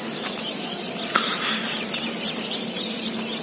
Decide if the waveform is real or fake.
real